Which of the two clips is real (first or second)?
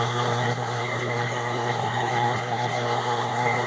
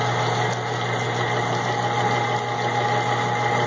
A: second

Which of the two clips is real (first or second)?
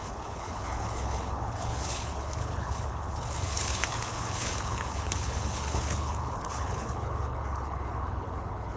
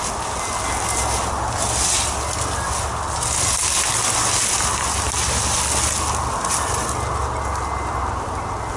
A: second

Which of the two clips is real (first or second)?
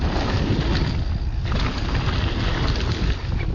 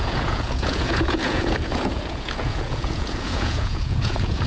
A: first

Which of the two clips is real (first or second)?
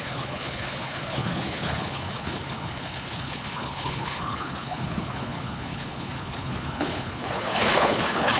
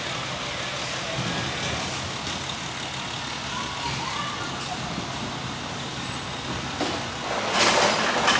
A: second